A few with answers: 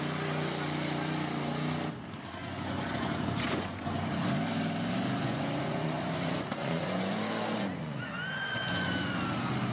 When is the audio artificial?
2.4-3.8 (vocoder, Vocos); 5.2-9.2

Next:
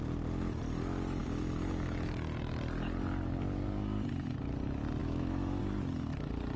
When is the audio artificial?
5.0-5.6 (autoencoder, DAC-VAE)

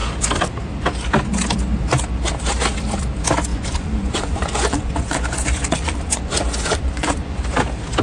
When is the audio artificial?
3.5-7.4 (vocoder, Vocos)

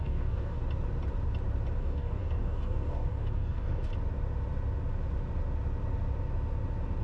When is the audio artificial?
0.0-0.6 (codec, DAC); 1.8-3.9

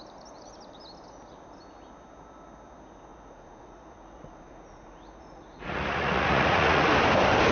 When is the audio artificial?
3.1-6.9 (vocoder, Vocos)

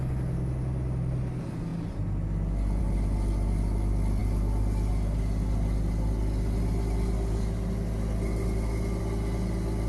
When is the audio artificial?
none

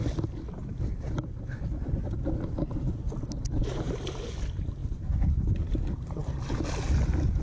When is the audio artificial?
none